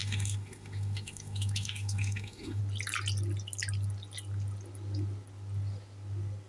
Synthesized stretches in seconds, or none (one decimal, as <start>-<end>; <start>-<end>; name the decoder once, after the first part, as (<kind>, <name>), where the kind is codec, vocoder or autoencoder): 0.0-2.6 (autoencoder, DAC-VAE)